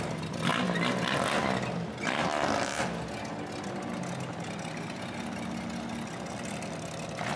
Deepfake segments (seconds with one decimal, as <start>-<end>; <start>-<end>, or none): none